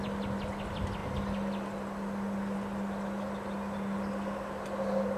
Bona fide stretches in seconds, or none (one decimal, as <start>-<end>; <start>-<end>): 0.0-5.2